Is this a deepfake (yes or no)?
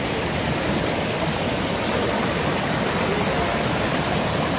no